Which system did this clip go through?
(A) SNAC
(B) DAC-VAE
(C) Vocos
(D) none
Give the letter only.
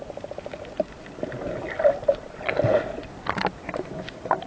D